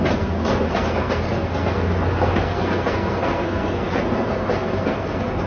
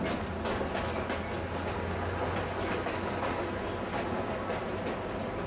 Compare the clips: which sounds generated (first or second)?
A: first